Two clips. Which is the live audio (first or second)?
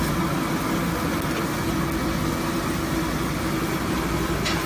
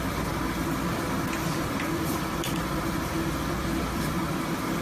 first